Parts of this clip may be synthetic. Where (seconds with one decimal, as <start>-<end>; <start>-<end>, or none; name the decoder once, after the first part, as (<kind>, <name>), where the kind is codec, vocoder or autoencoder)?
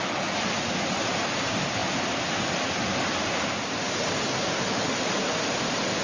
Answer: 1.8-5.3 (vocoder, BigVGAN v2)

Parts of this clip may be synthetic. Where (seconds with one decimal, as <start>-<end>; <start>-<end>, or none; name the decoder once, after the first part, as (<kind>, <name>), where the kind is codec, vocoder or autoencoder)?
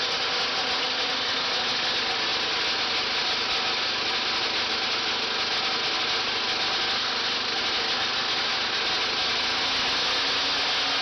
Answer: none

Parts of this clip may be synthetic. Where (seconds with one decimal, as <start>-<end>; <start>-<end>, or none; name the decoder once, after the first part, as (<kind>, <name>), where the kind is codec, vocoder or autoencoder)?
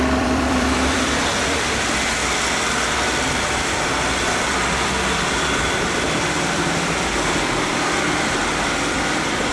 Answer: 0.0-2.2 (vocoder, BigVGAN v2); 4.3-8.4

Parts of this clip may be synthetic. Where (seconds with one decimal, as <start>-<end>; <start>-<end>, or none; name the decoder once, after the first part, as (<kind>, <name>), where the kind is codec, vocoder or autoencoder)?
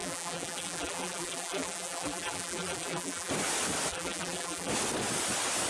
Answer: 0.0-3.3 (vocoder, BigVGAN v2); 3.9-4.7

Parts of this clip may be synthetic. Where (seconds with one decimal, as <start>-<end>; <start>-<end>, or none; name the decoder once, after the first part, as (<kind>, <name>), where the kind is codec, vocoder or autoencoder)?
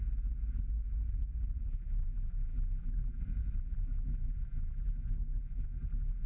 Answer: 1.6-3.2 (vocoder, BigVGAN v2); 3.6-6.3